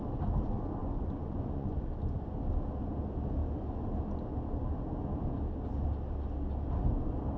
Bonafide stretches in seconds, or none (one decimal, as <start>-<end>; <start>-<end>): 0.0-0.8; 1.8-7.4